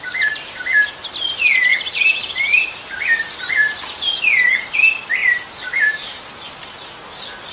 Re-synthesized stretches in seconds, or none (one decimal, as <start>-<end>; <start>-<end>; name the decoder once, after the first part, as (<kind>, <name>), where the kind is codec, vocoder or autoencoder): 1.7-3.4 (vocoder, BigVGAN v2); 5.2-6.2